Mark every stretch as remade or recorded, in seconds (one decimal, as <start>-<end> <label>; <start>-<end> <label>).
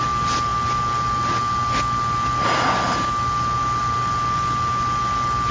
0.0-5.5 recorded